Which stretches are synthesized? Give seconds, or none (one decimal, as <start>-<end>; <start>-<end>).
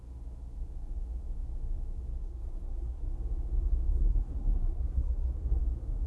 2.1-3.1; 3.9-5.6